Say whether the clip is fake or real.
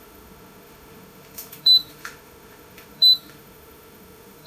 fake